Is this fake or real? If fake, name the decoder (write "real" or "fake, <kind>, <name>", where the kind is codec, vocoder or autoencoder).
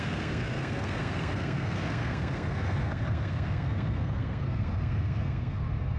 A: fake, codec, SNAC